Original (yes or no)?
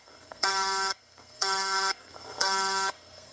no